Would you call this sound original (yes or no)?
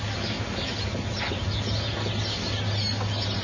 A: yes